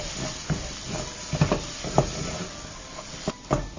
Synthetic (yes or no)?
no